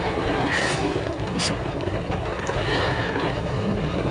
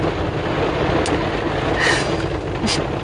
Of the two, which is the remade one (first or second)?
first